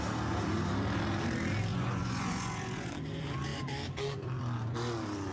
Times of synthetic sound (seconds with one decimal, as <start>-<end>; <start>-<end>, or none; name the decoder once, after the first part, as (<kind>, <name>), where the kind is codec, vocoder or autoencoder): 1.7-2.9 (vocoder, Vocos)